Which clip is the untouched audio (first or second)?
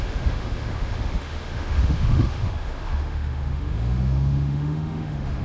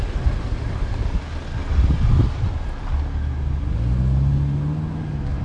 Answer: second